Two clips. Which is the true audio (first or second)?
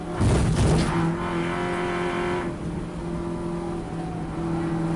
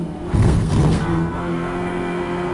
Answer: first